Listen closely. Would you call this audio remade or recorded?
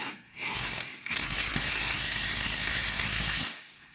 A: remade